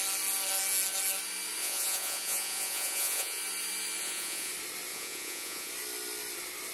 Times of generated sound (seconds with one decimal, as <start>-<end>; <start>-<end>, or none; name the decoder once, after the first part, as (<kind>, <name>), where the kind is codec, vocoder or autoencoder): 1.6-3.4 (vocoder, Vocos); 4.0-4.5; 4.9-5.7